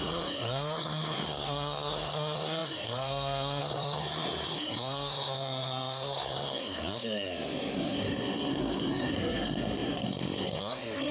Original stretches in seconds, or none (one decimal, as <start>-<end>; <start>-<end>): none